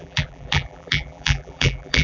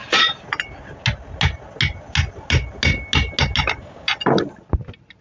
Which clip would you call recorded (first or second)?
second